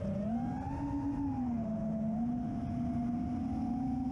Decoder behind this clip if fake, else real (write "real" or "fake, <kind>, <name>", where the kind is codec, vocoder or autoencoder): real